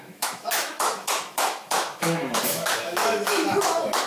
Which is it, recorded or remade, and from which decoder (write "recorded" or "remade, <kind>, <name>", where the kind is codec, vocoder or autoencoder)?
remade, autoencoder, DAC-VAE